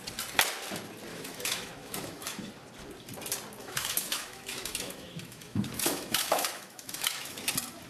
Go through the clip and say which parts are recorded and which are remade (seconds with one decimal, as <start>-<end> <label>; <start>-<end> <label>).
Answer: 0.0-1.1 recorded; 1.1-2.5 remade; 2.5-3.6 recorded; 3.6-7.4 remade; 7.4-7.9 recorded